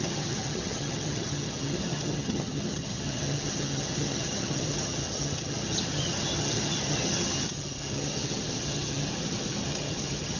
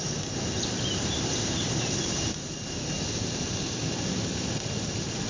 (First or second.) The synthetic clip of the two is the first